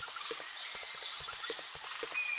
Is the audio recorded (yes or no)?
yes